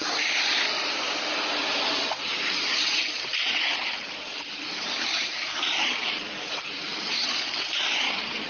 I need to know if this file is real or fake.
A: fake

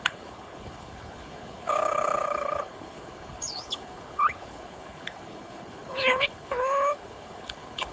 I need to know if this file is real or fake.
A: fake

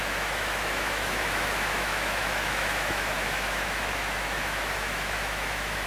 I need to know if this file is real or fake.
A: fake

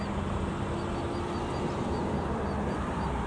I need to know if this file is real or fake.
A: real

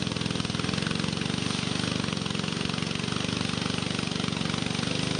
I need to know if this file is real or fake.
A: real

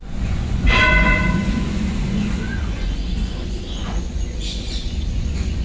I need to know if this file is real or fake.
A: fake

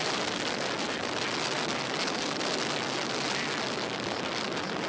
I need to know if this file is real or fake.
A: real